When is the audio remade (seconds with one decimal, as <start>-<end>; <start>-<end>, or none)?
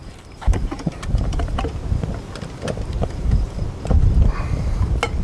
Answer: 0.0-1.6; 3.0-3.6